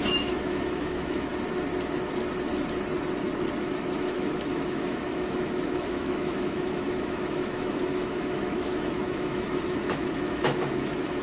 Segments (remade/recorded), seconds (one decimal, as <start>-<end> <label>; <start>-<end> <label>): 0.0-1.3 remade; 1.3-3.6 recorded; 3.6-11.2 remade